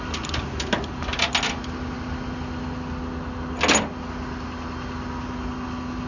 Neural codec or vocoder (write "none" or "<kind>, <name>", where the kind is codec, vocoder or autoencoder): none